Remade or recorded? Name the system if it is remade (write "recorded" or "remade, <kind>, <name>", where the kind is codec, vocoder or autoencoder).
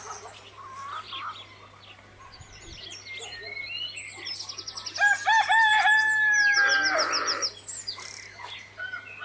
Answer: recorded